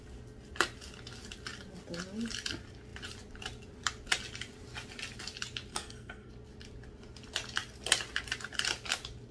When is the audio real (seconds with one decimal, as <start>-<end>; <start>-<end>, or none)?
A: 0.0-5.7; 6.3-9.3